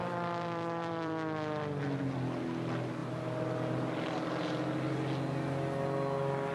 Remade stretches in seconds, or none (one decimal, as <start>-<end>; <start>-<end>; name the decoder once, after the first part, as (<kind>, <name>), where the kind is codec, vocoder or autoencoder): 0.0-1.8 (vocoder, BigVGAN v2); 3.0-4.9